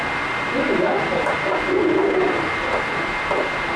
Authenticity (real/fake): real